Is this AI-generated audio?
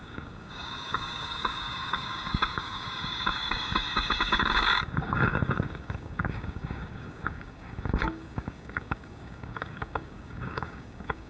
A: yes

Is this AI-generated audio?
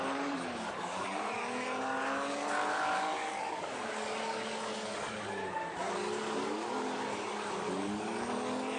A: yes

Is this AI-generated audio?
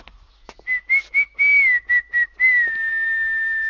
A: no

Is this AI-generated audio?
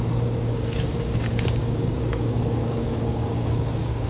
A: yes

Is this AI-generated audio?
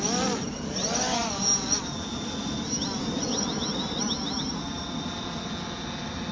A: no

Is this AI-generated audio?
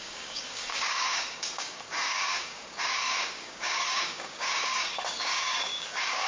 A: yes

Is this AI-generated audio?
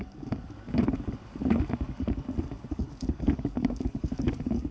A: yes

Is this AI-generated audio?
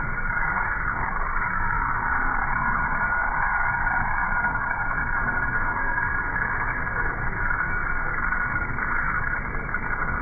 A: yes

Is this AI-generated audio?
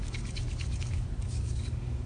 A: yes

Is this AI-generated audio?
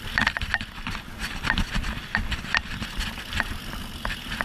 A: no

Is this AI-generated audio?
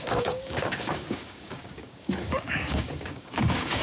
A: yes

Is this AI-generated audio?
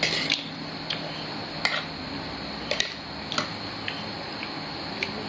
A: no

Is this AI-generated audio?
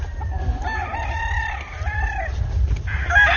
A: no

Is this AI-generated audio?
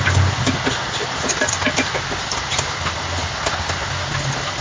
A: no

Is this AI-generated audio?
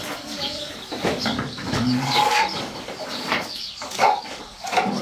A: yes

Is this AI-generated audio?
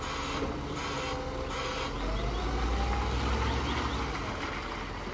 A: no